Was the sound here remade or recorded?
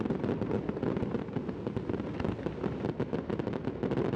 recorded